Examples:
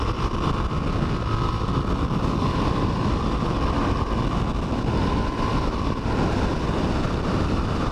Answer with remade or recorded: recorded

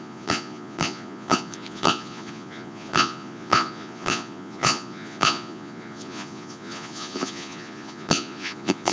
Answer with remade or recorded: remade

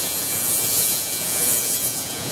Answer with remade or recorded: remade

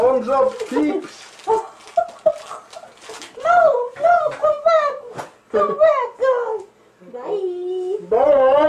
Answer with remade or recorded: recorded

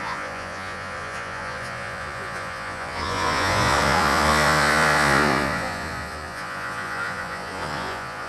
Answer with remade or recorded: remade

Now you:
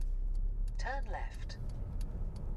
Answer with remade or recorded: recorded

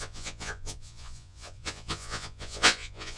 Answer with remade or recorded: remade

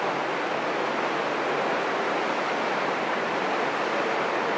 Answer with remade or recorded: recorded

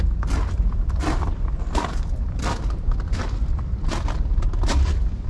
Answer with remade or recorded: recorded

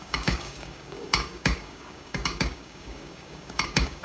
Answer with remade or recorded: remade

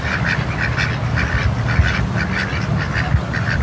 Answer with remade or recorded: remade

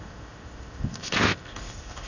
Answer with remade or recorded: remade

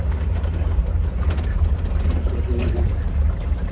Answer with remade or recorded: recorded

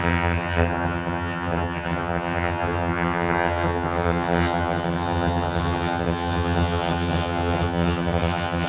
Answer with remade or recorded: remade